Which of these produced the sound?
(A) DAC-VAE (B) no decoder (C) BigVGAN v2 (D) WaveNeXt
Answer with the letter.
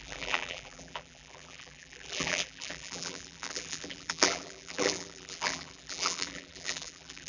C